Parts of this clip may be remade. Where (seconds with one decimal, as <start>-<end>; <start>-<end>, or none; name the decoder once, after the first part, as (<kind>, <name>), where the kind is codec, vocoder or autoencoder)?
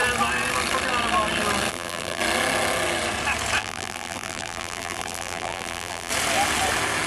1.7-2.2 (vocoder, BigVGAN v2); 3.6-6.1